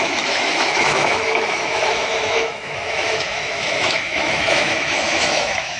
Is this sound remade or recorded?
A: remade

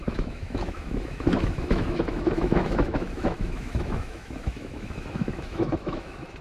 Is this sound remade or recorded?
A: remade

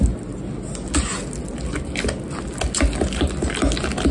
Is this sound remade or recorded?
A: recorded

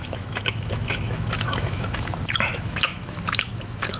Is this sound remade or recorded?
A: remade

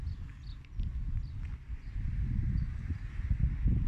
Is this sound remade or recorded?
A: recorded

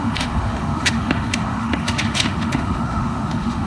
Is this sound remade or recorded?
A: remade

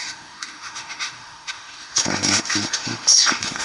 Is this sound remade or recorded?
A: remade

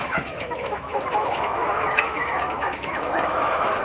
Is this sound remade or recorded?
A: remade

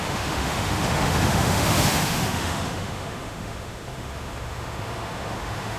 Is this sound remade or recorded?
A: remade